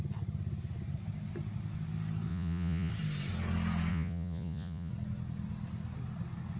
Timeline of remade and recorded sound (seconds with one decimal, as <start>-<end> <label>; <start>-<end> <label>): 0.0-2.3 recorded; 2.3-2.9 remade; 2.9-3.9 recorded; 3.9-4.9 remade; 4.9-6.6 recorded